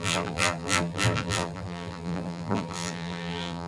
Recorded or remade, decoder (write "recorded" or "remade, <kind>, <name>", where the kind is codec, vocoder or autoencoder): remade, vocoder, BigVGAN v2